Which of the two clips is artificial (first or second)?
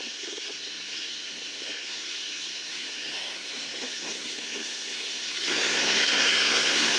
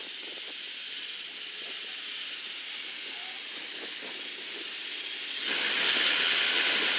first